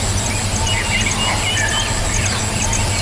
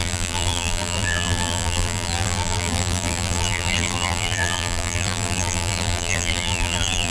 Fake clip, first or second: second